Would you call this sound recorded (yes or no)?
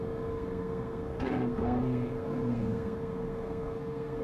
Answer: no